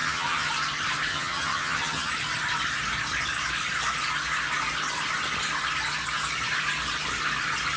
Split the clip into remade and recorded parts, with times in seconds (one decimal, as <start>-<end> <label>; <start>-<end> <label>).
0.0-0.5 remade; 0.5-1.1 recorded; 1.1-2.1 remade; 2.1-7.8 recorded